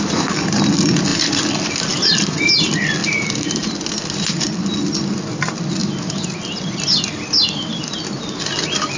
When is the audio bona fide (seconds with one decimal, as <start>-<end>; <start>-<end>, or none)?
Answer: 0.0-3.0; 3.7-9.0